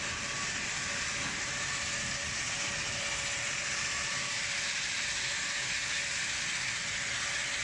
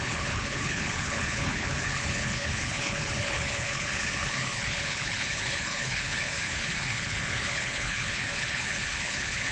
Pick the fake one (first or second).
second